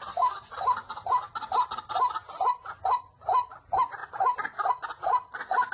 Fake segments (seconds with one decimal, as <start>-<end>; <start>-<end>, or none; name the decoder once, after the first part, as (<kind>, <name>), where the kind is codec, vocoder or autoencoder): none